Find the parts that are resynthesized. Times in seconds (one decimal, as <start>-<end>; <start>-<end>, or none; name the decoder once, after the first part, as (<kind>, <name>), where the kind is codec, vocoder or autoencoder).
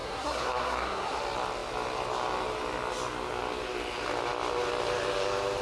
0.0-1.2 (codec, SNAC)